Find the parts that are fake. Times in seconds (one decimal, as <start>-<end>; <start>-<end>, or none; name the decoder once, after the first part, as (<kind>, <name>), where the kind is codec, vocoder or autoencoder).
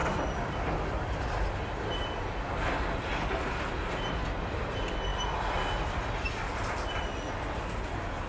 none